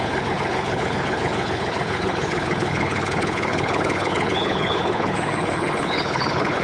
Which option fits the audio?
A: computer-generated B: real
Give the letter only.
A